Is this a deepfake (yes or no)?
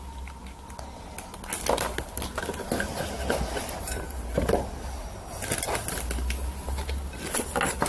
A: no